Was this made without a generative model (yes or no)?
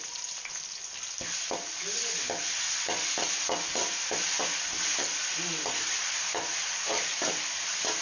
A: yes